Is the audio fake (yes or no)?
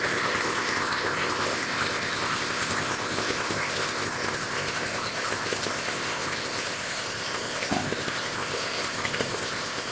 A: yes